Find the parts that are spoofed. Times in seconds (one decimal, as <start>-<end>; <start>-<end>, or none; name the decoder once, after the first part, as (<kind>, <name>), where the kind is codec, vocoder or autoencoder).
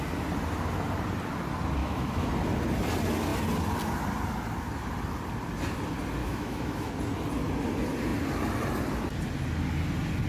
1.8-2.3 (autoencoder, DAC-VAE); 6.2-6.9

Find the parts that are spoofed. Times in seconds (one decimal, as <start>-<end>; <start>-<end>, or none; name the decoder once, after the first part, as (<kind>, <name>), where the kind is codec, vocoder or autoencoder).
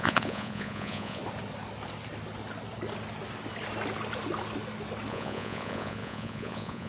0.0-1.2 (vocoder, Vocos); 5.1-6.9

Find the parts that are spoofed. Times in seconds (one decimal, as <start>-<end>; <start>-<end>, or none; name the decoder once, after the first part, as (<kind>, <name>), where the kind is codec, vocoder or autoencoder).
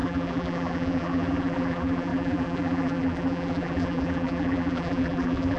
0.0-5.6 (vocoder, BigVGAN v2)